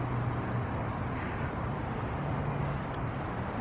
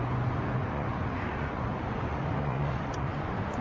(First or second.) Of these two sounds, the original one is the first